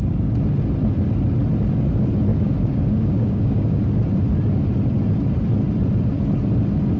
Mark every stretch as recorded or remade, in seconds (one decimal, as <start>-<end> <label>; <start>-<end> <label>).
0.0-2.3 recorded; 2.3-3.8 remade; 3.8-7.0 recorded